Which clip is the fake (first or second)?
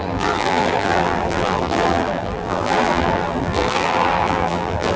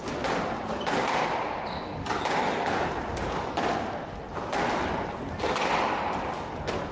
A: first